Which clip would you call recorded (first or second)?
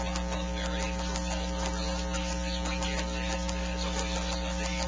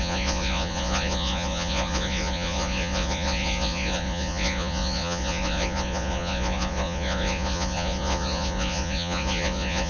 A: first